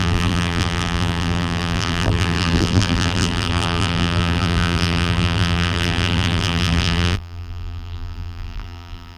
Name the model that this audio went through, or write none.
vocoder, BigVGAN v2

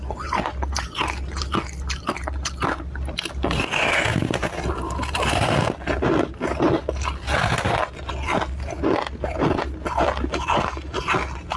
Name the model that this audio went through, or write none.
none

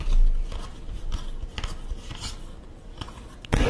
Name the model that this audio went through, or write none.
none